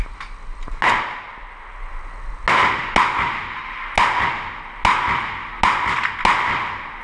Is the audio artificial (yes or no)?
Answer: no